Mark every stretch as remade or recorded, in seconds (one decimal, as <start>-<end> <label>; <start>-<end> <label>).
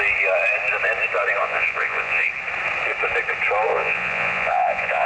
0.0-1.4 recorded; 1.4-2.3 remade; 2.3-3.7 recorded; 3.7-5.1 remade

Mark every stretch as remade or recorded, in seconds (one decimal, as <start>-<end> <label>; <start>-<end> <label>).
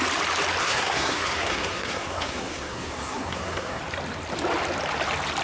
0.0-0.6 recorded; 0.6-3.8 remade; 3.8-5.4 recorded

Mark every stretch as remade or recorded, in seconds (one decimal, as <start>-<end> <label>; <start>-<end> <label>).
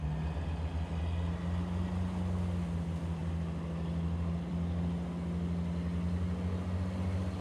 0.0-7.4 recorded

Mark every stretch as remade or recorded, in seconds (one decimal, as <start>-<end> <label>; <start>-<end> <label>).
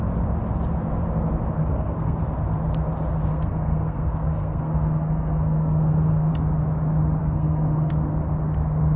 0.0-1.6 recorded; 1.6-2.2 remade; 2.2-3.3 recorded; 3.3-6.3 remade; 6.3-7.2 recorded; 7.2-7.9 remade; 7.9-9.0 recorded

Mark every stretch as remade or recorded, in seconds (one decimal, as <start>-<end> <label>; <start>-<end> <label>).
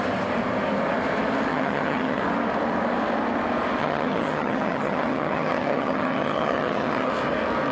0.0-1.5 recorded; 1.5-2.2 remade; 2.2-3.8 recorded; 3.8-7.1 remade; 7.1-7.7 recorded